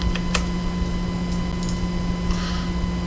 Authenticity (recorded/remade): recorded